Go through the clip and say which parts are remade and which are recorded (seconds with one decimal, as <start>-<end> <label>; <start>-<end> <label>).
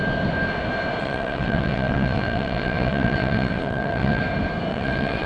0.0-1.0 recorded; 1.0-4.2 remade; 4.2-4.7 recorded; 4.7-5.3 remade